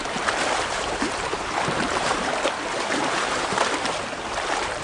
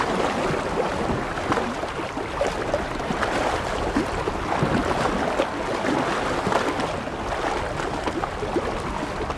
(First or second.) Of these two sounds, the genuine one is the second